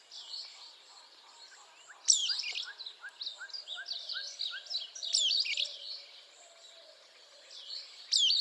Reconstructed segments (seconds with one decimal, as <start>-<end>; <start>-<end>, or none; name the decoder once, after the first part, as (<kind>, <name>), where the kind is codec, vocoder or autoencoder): none